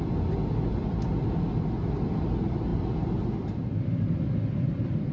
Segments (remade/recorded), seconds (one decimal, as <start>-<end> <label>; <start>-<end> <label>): 0.0-5.1 recorded